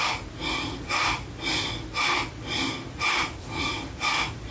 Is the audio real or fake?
real